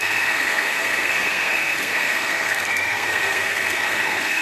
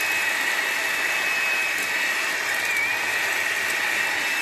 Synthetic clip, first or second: first